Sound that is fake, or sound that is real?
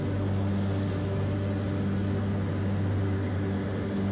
real